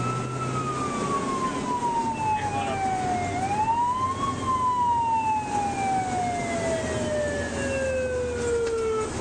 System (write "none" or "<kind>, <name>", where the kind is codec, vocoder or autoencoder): none